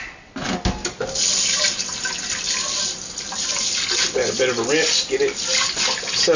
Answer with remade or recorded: recorded